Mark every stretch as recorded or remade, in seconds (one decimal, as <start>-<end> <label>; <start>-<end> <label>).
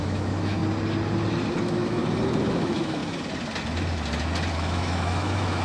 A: 0.0-0.6 remade; 0.6-1.6 recorded; 1.6-2.0 remade; 2.0-2.5 recorded; 2.5-3.0 remade; 3.0-4.5 recorded; 4.5-5.6 remade